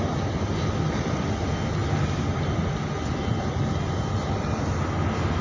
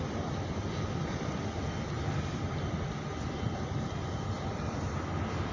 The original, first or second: first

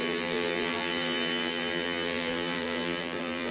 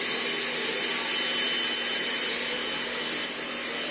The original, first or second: second